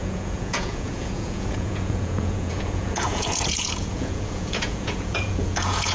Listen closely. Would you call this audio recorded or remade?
remade